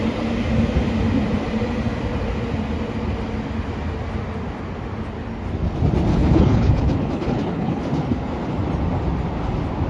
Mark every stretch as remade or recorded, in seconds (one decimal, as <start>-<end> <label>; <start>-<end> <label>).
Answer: 0.0-6.1 recorded; 6.1-7.8 remade; 7.8-9.9 recorded